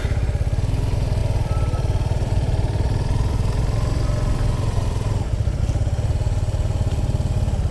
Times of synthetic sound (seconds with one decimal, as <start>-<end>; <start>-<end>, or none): 1.2-5.6